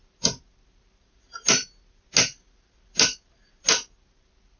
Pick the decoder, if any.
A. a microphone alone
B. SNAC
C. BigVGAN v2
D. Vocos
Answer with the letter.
A